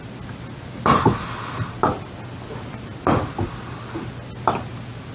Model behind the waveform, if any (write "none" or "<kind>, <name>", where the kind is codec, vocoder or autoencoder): none